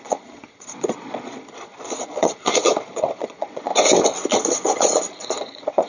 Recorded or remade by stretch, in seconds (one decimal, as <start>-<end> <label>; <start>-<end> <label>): 0.0-3.7 remade; 3.7-4.3 recorded; 4.3-5.9 remade